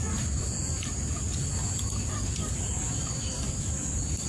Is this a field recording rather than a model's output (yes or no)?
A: yes